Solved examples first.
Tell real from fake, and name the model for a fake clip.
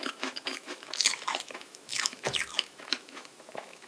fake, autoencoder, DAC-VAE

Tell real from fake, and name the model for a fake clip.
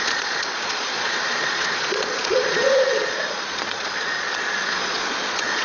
fake, vocoder, Vocos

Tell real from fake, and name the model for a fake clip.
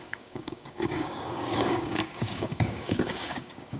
fake, codec, DAC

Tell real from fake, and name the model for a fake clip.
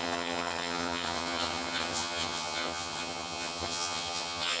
fake, vocoder, HiFi-GAN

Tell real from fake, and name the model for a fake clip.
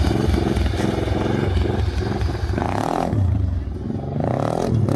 real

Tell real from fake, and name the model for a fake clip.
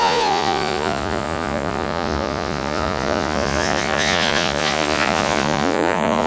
fake, vocoder, Vocos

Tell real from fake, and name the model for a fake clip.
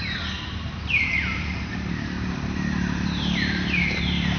fake, vocoder, BigVGAN v2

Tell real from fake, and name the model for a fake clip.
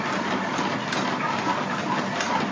real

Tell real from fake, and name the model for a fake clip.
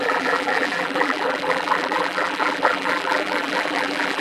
fake, vocoder, BigVGAN v2